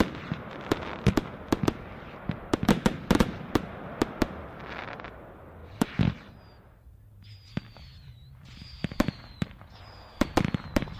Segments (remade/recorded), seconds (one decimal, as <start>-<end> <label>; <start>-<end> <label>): 0.0-11.0 recorded